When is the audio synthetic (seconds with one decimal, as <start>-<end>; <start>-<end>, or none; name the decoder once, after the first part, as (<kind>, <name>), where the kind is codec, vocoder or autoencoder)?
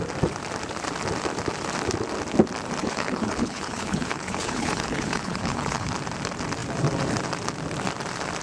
2.8-5.9 (codec, HILCodec)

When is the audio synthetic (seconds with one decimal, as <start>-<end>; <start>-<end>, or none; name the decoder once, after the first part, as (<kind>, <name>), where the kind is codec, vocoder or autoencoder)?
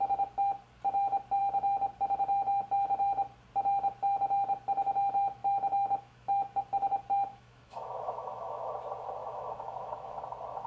5.4-6.6 (autoencoder, DAC-VAE); 7.3-8.7; 9.2-10.2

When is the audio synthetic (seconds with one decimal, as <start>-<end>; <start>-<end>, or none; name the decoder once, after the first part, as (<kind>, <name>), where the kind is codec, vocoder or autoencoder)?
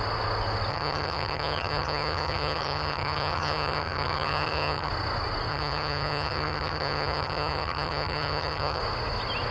0.7-4.9 (vocoder, HiFi-GAN); 5.5-8.8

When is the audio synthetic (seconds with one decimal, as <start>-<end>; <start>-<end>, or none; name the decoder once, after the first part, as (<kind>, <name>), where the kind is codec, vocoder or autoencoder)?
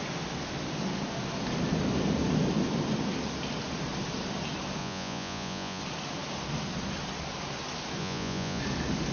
4.8-5.8 (vocoder, Vocos); 8.0-8.6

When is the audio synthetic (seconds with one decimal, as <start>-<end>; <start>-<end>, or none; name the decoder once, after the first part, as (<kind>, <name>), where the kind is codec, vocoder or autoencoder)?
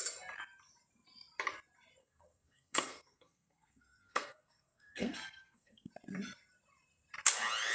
2.0-5.9 (codec, SNAC)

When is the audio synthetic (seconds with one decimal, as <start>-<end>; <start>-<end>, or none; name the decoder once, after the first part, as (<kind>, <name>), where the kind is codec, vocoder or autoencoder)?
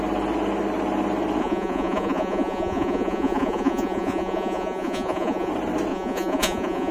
1.4-5.5 (vocoder, Vocos); 5.9-6.9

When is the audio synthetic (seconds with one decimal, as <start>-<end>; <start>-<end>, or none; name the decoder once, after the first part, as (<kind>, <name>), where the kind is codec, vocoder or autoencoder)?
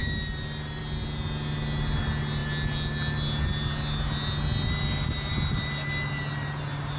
none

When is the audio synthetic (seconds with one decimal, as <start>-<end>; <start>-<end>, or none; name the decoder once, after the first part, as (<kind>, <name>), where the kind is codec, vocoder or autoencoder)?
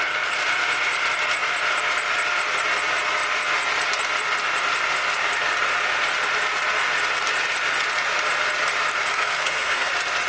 9.1-9.9 (codec, SNAC)